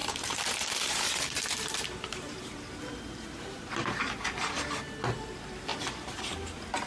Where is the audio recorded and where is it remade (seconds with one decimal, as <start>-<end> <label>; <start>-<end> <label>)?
0.0-4.1 remade; 4.1-5.7 recorded; 5.7-6.2 remade; 6.2-6.9 recorded